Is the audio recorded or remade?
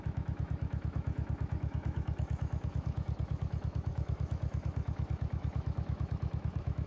remade